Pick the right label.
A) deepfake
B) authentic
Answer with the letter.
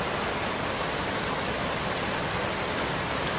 B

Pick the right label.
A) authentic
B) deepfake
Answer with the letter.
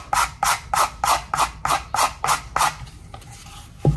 A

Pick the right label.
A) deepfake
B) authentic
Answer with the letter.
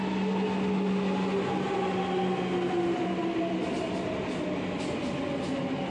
B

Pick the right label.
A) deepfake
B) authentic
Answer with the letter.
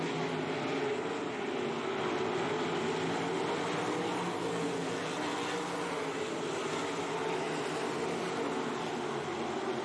B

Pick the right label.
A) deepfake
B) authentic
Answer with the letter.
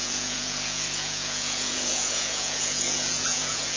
A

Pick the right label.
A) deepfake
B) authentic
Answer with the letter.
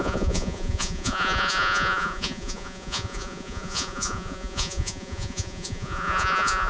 A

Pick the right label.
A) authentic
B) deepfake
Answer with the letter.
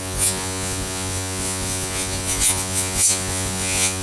B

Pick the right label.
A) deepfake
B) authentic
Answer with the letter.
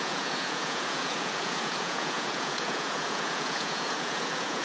A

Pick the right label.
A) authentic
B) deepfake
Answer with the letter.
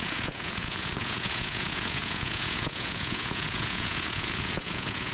B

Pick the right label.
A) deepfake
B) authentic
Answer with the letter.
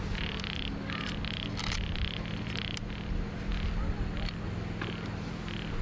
B